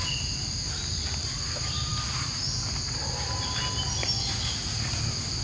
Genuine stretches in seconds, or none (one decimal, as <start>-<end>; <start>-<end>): 0.0-5.4